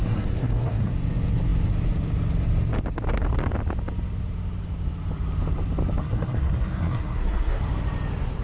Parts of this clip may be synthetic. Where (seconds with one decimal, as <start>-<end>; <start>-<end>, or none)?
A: 0.0-0.9; 6.0-7.6